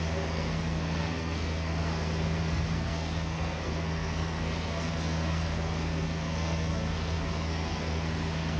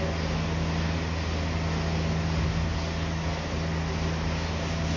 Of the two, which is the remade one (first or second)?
first